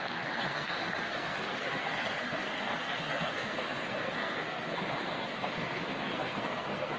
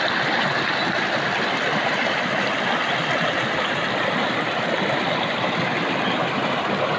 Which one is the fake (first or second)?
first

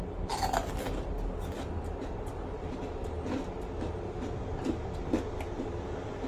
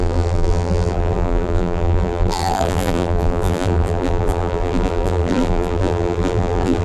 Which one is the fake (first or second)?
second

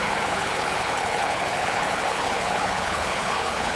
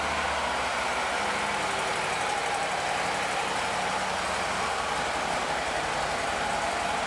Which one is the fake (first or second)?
first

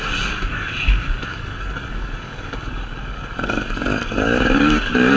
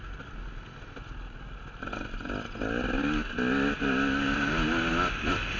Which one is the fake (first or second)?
first